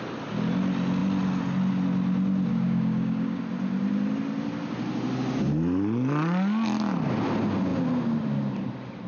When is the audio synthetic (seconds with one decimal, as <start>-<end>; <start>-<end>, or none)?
2.5-3.4